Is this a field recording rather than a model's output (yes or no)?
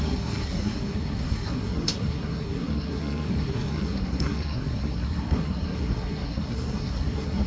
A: no